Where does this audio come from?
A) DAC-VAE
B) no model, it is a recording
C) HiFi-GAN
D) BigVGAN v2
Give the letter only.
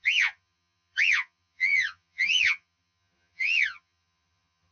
C